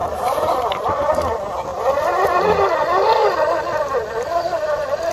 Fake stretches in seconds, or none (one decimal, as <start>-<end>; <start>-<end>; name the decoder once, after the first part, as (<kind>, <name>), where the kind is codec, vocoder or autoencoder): 0.0-0.9 (vocoder, BigVGAN v2); 1.7-2.4